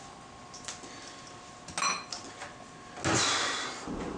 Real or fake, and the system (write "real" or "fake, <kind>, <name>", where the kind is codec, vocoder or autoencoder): real